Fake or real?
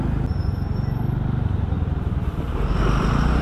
real